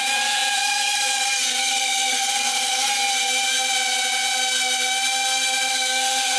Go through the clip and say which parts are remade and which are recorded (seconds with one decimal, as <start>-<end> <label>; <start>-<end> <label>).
0.0-2.9 remade; 2.9-5.7 recorded; 5.7-6.4 remade